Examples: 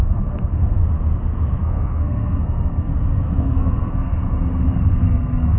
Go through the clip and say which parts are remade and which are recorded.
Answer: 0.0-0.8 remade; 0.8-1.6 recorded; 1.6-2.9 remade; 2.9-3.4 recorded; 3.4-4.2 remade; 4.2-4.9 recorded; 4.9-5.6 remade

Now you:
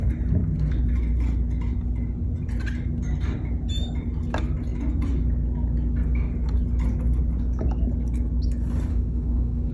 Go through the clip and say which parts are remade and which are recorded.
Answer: 0.0-8.9 recorded; 8.9-9.7 remade

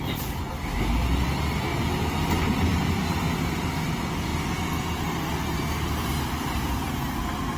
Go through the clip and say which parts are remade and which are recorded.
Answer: 0.0-7.6 recorded

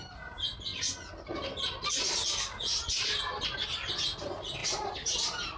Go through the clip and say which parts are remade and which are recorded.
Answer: 0.0-4.6 recorded; 4.6-5.6 remade